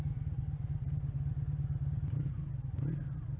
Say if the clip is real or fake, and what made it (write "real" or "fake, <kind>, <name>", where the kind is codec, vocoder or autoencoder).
real